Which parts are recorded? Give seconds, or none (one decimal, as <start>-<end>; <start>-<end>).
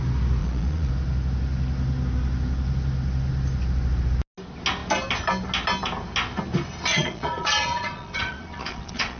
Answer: 0.0-0.4; 0.9-6.9